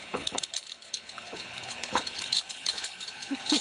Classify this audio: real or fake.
fake